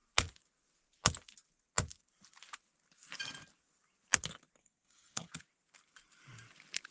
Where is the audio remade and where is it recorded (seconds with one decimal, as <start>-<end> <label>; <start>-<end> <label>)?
0.0-4.6 recorded; 4.6-5.3 remade; 5.3-6.9 recorded